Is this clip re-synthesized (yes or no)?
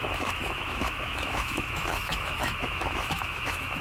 yes